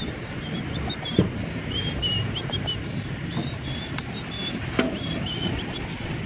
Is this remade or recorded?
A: recorded